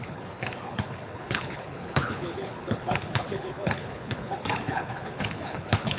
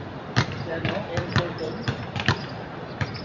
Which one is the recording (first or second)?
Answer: second